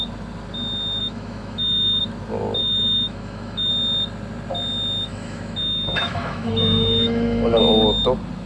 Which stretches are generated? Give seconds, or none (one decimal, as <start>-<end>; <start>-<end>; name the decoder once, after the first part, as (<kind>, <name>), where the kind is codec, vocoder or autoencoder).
1.0-2.0 (autoencoder, DAC-VAE); 2.6-3.7; 5.1-7.6